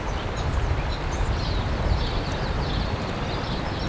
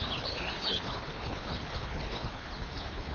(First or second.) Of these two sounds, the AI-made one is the second